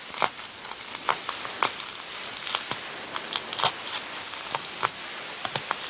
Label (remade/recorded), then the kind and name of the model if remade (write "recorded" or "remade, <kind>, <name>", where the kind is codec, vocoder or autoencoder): recorded